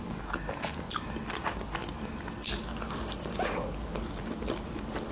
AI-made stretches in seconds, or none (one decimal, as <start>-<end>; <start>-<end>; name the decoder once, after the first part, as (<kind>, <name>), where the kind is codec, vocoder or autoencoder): none